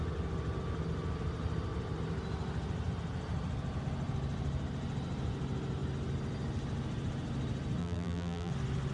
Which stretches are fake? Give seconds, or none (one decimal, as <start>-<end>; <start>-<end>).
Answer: 7.8-8.5